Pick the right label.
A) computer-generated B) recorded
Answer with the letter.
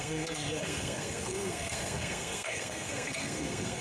A